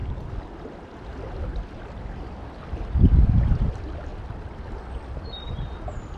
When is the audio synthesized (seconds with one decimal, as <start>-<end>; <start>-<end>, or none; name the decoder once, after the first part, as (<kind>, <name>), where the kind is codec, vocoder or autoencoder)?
2.0-4.1 (vocoder, BigVGAN v2); 5.0-6.2